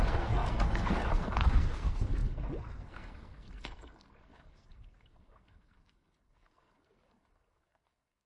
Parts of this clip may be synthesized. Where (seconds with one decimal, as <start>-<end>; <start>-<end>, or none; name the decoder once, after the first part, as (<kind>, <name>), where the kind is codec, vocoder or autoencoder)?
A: 0.0-8.3 (codec, SNAC)